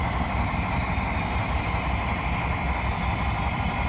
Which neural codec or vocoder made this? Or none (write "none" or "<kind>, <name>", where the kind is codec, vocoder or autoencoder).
none